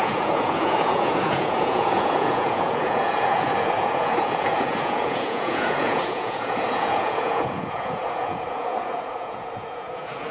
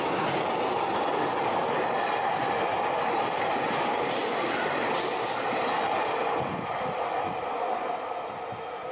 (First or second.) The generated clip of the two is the first